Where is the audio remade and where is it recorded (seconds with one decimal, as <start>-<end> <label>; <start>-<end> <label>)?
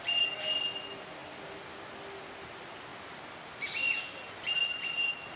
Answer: 0.0-2.9 recorded; 2.9-5.4 remade